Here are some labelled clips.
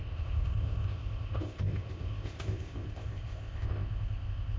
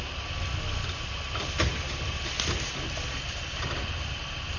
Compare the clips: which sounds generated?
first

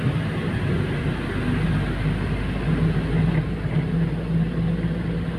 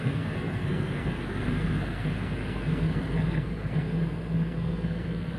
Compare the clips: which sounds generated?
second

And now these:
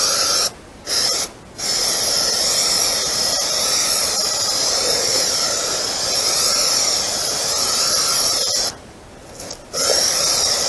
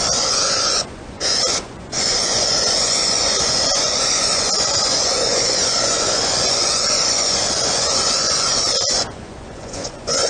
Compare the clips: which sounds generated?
second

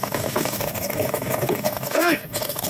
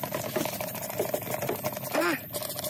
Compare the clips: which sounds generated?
first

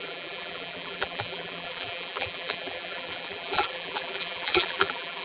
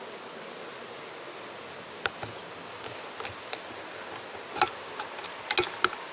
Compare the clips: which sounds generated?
first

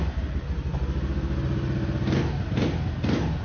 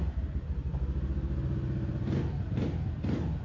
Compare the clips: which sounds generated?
second